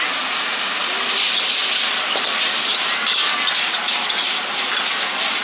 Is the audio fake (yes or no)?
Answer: no